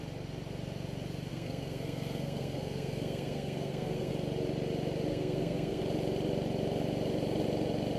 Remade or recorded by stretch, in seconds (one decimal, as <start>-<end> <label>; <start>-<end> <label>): 0.0-1.3 recorded; 1.3-4.1 remade; 4.1-5.1 recorded; 5.1-5.8 remade; 5.8-8.0 recorded